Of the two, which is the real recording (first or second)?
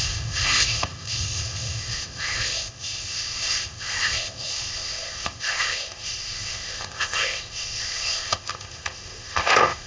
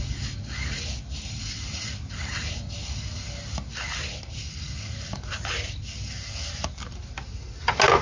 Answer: second